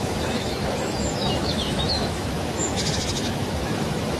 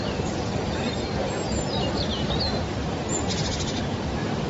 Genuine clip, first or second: second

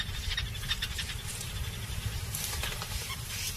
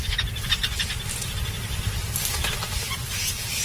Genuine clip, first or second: second